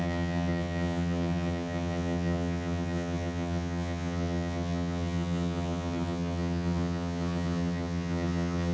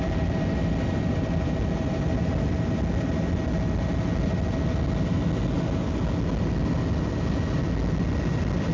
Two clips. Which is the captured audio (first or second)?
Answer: second